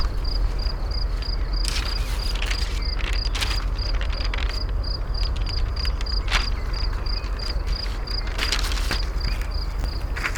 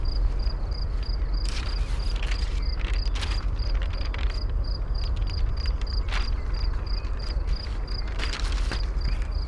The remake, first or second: second